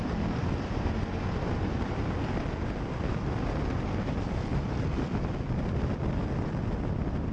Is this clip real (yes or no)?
yes